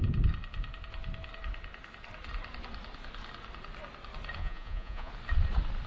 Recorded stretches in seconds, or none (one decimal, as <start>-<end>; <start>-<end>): 0.0-4.4; 5.1-5.9

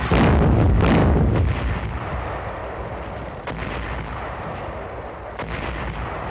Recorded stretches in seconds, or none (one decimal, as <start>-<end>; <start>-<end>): 0.0-6.3

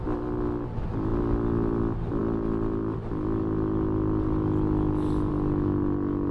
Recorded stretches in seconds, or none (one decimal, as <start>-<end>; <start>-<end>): 0.0-6.3

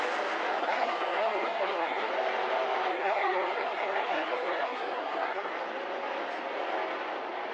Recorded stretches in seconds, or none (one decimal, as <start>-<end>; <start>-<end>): 0.0-0.6; 2.1-2.9; 5.5-7.5

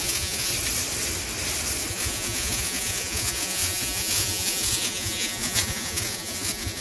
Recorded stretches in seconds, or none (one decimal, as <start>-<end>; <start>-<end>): 0.5-1.9